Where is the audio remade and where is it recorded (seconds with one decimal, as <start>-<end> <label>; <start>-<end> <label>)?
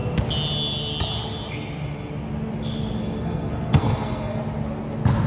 0.0-3.0 recorded; 3.0-4.4 remade; 4.4-5.3 recorded